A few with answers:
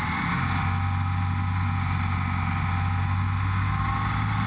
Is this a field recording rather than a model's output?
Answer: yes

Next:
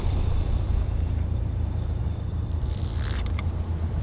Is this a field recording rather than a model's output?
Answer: no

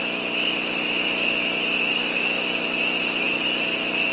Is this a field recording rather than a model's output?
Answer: yes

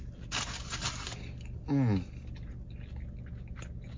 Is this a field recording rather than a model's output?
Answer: yes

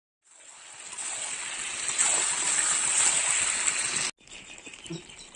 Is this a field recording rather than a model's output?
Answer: yes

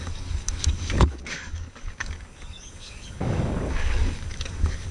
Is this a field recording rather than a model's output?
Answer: no